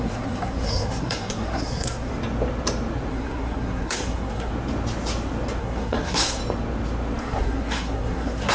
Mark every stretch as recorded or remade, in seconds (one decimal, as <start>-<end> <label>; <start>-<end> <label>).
0.0-2.1 remade; 2.1-3.1 recorded; 3.1-4.5 remade; 4.5-5.6 recorded; 5.6-6.4 remade; 6.4-7.2 recorded; 7.2-8.5 remade